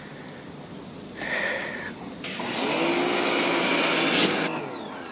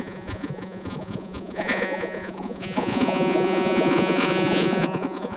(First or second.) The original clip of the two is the first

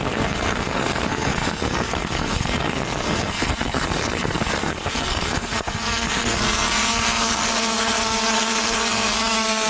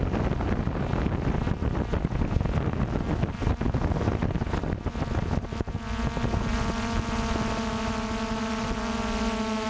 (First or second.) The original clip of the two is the second